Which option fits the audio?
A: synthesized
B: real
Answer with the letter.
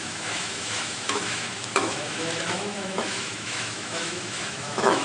A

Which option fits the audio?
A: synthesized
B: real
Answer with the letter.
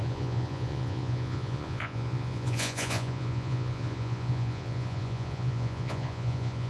A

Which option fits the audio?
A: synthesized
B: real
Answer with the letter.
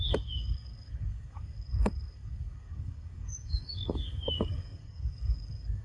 A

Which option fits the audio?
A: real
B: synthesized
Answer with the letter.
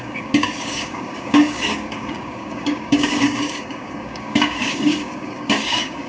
B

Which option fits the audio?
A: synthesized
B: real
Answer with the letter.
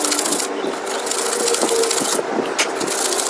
B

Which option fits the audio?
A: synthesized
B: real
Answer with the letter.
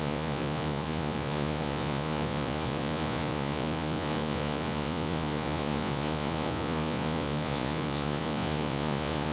A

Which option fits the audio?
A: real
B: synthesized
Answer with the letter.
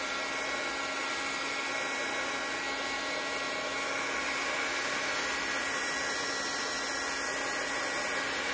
A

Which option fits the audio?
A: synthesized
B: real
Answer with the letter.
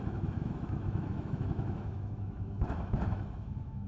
A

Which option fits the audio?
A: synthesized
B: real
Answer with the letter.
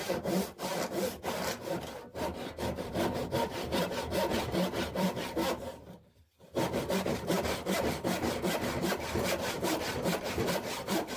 A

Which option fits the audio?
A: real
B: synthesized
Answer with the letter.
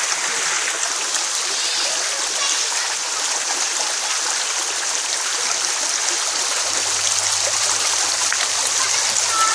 A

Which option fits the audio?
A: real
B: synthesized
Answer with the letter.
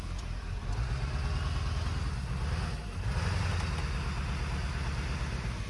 A